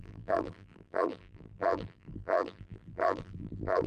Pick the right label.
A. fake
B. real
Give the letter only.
A